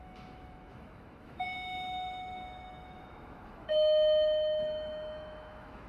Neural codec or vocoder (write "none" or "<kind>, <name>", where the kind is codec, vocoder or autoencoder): autoencoder, DAC-VAE